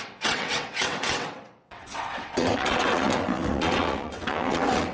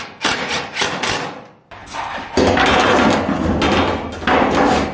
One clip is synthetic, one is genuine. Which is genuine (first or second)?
second